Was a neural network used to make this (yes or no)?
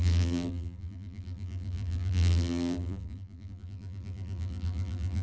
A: yes